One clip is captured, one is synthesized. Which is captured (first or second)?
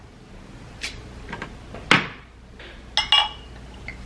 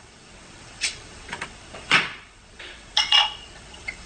first